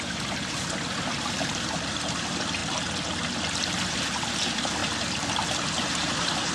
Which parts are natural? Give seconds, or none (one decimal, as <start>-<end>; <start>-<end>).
2.6-3.9; 4.8-5.9